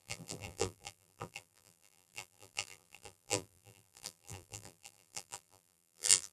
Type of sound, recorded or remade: remade